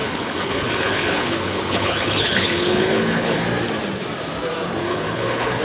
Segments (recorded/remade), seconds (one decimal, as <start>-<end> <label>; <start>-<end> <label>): 0.0-3.4 remade; 3.4-4.8 recorded; 4.8-5.6 remade